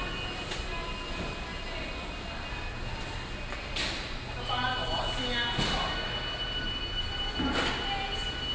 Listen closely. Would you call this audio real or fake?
real